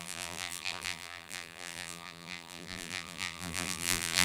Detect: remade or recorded remade